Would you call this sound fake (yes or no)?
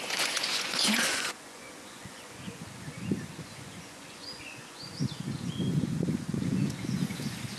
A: yes